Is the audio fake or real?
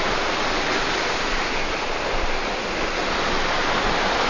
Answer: real